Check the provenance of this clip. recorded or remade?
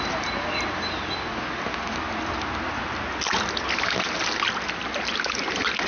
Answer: recorded